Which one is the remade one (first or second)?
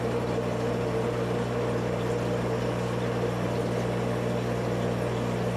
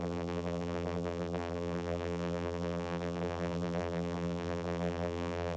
second